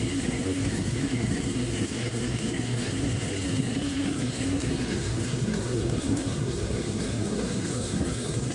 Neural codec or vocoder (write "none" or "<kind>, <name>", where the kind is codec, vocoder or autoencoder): codec, SNAC